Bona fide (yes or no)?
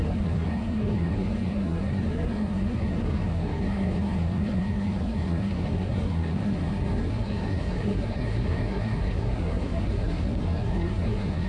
no